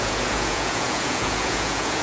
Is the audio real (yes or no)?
no